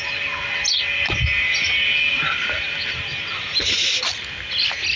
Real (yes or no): yes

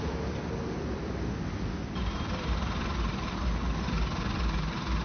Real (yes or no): yes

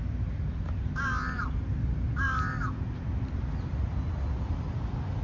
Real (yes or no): yes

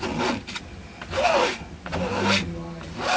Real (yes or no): yes